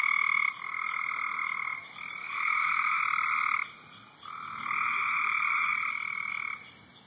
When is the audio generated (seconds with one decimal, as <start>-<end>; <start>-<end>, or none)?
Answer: 2.2-3.0